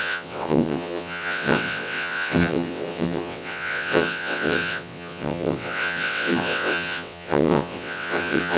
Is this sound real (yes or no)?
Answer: no